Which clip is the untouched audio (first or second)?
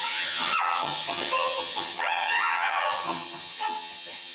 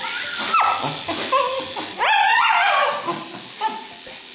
second